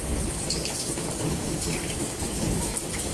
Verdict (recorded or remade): remade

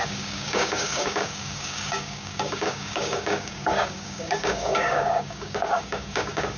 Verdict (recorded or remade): remade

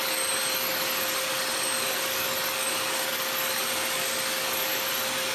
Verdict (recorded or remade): remade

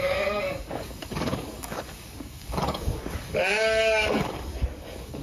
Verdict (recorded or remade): remade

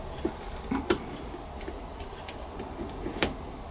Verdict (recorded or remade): recorded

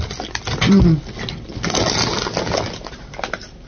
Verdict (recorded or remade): recorded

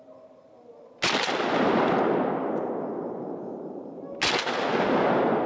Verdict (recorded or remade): recorded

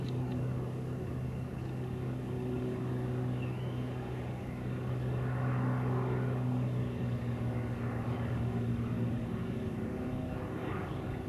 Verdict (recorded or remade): remade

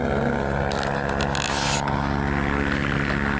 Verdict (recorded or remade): recorded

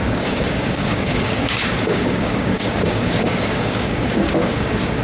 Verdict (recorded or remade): remade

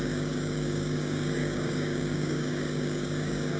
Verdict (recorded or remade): remade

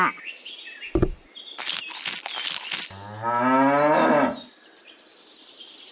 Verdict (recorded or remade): recorded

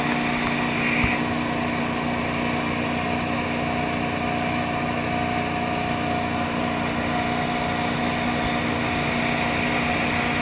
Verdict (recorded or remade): recorded